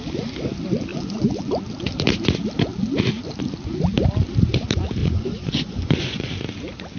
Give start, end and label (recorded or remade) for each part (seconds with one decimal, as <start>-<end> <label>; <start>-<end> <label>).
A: 0.0-0.9 recorded; 0.9-1.5 remade; 1.5-5.0 recorded; 5.0-6.3 remade; 6.3-7.0 recorded